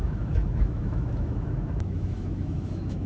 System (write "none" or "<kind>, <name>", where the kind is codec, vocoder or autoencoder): autoencoder, DAC-VAE